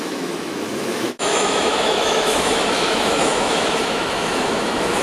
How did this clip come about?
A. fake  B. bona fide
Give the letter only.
A